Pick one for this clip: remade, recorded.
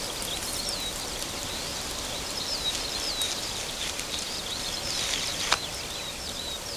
remade